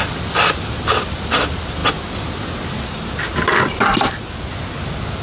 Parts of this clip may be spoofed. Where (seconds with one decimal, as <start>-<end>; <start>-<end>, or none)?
none